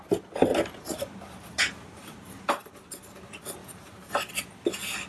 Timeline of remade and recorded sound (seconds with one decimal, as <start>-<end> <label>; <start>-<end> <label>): 0.0-0.5 recorded; 0.5-2.5 remade; 2.5-3.6 recorded; 3.6-4.1 remade; 4.1-5.1 recorded